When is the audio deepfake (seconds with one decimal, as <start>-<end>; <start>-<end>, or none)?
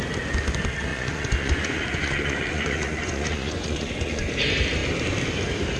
0.9-4.3